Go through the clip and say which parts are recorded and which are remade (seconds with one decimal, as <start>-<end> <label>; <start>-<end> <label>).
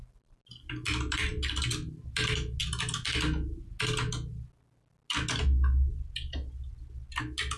0.0-7.6 recorded